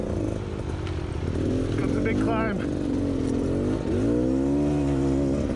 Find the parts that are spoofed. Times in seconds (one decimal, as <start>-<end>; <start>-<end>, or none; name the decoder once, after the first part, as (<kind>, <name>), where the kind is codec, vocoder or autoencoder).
none